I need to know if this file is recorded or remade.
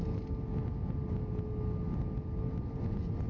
recorded